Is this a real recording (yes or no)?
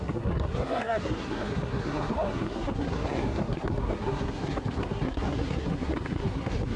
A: no